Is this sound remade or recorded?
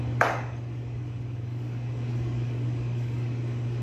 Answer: remade